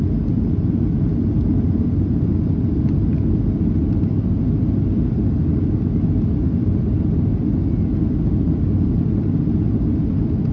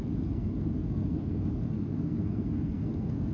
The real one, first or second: first